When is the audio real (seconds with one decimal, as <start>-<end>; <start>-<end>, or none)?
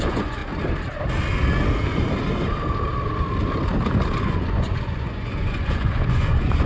0.4-4.2